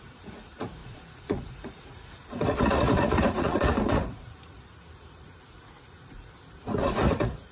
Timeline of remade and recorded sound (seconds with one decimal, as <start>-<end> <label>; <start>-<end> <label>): 0.0-7.5 remade